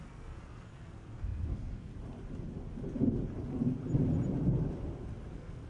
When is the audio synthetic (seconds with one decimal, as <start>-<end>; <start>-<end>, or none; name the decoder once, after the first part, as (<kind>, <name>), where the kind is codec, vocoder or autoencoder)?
0.0-1.9 (codec, SNAC); 5.3-5.7